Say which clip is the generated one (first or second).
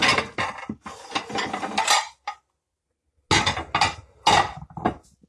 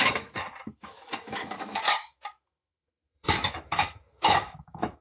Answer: second